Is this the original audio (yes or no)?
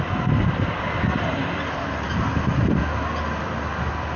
yes